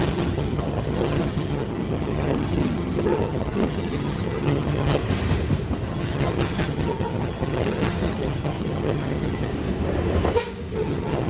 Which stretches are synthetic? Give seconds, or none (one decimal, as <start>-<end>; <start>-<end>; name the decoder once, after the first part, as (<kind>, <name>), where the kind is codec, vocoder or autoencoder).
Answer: 0.0-5.0 (vocoder, HiFi-GAN); 5.9-9.5; 10.7-11.3

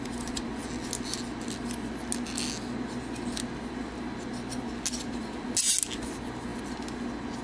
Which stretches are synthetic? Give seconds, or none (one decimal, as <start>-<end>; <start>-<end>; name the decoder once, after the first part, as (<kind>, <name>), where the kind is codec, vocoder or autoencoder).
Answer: none